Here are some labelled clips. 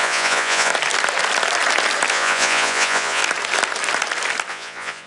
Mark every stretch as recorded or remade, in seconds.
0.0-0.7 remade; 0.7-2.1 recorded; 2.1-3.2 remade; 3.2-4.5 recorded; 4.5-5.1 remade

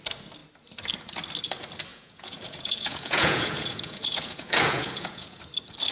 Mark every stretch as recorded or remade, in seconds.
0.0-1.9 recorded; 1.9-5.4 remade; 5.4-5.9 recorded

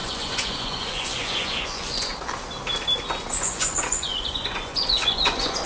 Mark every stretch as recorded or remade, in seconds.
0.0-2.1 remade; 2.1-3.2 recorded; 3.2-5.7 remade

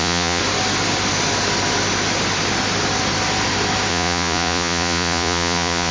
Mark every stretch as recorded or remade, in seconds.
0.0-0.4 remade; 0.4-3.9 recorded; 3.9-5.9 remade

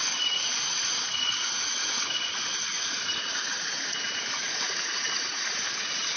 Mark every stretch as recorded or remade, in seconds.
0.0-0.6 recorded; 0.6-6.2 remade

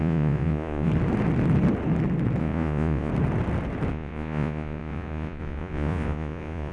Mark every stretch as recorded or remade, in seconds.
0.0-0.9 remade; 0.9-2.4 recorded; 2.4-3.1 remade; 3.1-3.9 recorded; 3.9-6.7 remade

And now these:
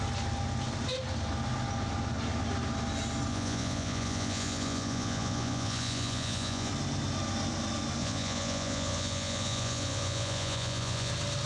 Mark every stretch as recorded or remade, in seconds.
0.0-3.3 recorded; 3.3-6.7 remade; 6.7-8.0 recorded; 8.0-11.1 remade; 11.1-11.5 recorded

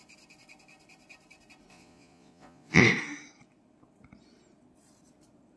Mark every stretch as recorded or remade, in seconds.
0.0-1.7 recorded; 1.7-2.8 remade; 2.8-5.6 recorded